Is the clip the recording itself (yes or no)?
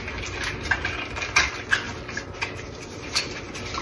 yes